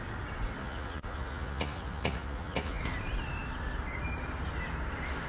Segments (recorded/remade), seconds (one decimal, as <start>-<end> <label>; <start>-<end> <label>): 0.0-0.6 recorded; 0.6-2.8 remade; 2.8-5.3 recorded